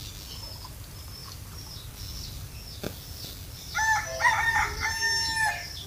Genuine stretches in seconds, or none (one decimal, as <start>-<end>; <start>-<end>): 0.0-1.2; 1.9-5.9

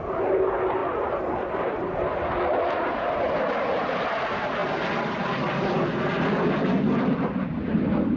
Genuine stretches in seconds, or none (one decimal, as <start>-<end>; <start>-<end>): 0.0-8.2

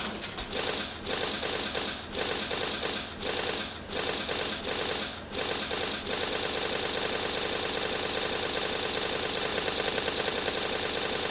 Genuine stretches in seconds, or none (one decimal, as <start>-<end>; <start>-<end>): 0.0-9.5; 10.5-11.3

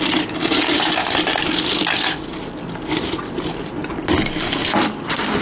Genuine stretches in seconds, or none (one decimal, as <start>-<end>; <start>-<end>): 0.0-5.4

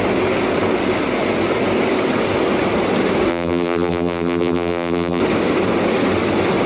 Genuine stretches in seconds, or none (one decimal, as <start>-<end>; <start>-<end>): 0.0-3.3; 5.2-6.7

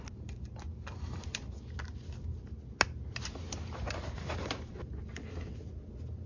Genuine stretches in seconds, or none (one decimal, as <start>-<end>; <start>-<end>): 0.0-3.4; 4.7-6.3

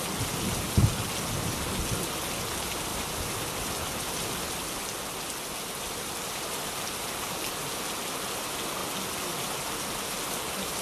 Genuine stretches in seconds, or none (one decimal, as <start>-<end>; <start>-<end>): 0.0-2.9; 4.7-10.8